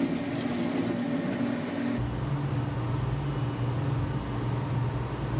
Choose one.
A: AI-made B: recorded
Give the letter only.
B